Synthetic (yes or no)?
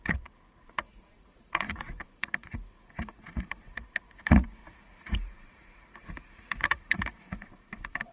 yes